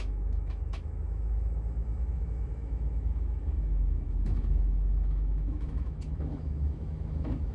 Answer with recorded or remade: remade